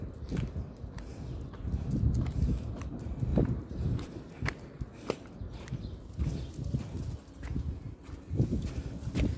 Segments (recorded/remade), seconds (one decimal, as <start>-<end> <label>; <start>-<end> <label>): 0.0-3.3 recorded; 3.3-4.2 remade; 4.2-9.4 recorded

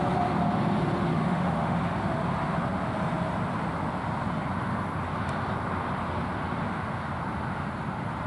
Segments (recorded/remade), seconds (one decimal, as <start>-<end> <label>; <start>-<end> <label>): 0.0-1.1 recorded; 1.1-1.8 remade; 1.8-8.3 recorded

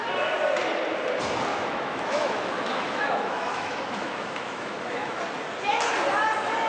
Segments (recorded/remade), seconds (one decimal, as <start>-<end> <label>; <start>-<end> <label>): 0.0-1.5 recorded; 1.5-5.2 remade; 5.2-6.7 recorded

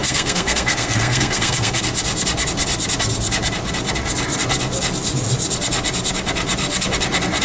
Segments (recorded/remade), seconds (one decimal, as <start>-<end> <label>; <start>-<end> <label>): 0.0-1.8 remade; 1.8-7.4 recorded

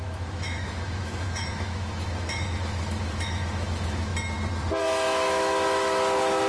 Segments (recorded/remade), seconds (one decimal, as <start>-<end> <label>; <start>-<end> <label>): 0.0-4.1 remade; 4.1-4.8 recorded; 4.8-6.5 remade